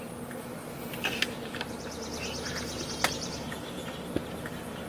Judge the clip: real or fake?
real